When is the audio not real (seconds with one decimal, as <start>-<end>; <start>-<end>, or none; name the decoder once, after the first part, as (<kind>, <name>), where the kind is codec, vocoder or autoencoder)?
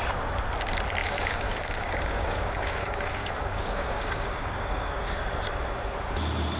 1.0-5.0 (codec, DAC)